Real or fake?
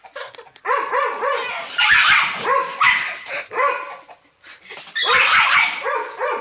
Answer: fake